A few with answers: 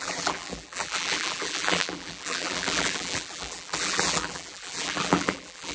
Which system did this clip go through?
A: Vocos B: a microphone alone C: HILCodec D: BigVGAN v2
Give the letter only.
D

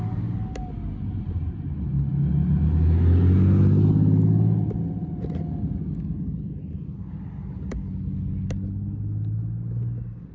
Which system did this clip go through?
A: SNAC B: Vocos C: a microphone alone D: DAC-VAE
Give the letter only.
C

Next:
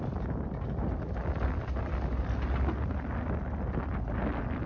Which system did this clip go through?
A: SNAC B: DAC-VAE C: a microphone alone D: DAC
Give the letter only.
C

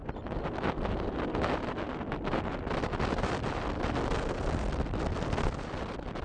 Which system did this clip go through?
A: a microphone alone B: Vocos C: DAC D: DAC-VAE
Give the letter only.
A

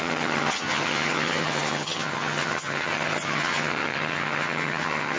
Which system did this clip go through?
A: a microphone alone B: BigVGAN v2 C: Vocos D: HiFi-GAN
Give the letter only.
D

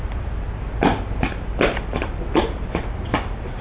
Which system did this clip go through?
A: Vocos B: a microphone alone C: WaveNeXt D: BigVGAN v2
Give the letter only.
B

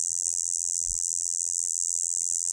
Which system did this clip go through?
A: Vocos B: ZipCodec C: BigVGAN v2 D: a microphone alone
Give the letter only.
C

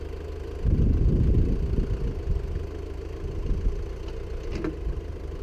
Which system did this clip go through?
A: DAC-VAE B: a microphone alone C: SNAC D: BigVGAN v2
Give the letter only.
B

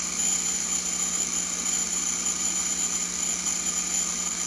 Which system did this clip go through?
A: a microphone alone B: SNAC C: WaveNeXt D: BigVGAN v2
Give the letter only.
A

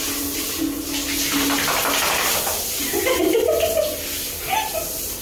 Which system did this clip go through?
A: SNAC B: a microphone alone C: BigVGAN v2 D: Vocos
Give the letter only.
B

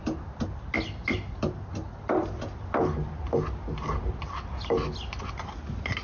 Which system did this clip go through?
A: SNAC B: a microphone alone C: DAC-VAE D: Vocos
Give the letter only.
B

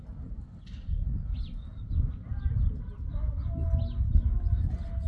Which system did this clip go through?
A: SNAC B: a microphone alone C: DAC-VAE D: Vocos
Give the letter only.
B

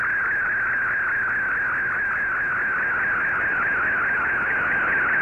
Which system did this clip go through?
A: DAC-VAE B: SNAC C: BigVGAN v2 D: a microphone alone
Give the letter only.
D